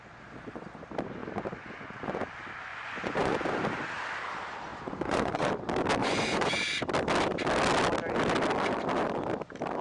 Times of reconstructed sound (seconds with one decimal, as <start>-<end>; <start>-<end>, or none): 1.2-2.2; 2.7-3.4; 4.7-5.5; 6.0-6.7